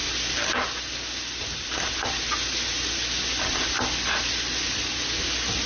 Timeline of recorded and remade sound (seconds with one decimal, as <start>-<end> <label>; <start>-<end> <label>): 0.0-5.7 recorded